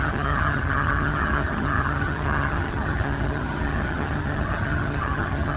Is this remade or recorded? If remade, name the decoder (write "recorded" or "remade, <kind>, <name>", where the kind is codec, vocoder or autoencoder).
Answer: remade, vocoder, HiFi-GAN